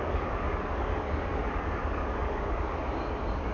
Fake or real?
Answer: fake